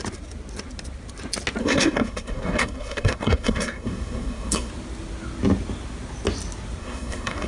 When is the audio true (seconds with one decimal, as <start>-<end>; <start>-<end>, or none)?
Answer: 0.0-1.6; 4.7-6.8